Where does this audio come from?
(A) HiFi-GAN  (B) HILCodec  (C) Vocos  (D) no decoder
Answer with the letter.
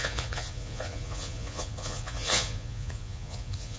C